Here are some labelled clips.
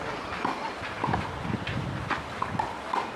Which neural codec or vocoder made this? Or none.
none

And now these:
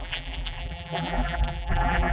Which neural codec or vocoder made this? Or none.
vocoder, BigVGAN v2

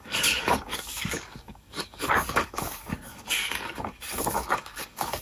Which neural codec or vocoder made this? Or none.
codec, DAC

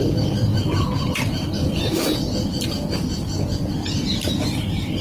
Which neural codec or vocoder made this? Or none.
none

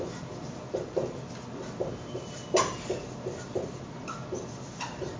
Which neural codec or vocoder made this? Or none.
none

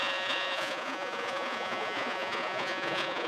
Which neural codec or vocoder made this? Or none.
vocoder, Vocos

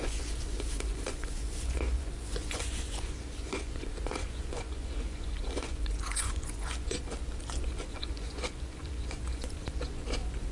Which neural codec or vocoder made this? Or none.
vocoder, Vocos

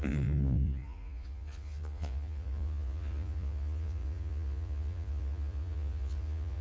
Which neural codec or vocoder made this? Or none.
vocoder, Vocos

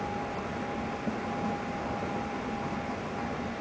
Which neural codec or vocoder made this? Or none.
none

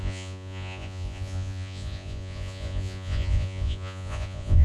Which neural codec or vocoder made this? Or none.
vocoder, Vocos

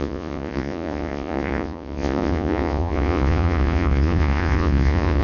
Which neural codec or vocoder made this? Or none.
vocoder, Vocos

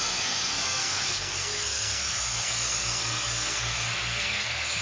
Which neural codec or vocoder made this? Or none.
codec, SNAC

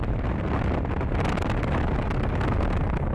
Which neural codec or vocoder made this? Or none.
none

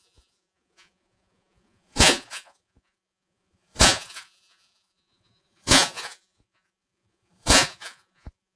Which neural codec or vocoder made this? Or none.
vocoder, Vocos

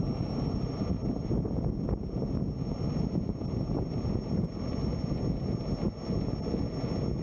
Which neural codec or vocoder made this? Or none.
none